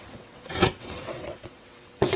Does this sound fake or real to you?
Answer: fake